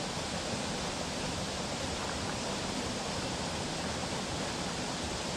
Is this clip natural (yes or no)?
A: yes